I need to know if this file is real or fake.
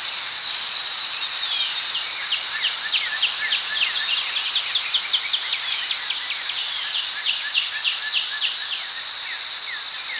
real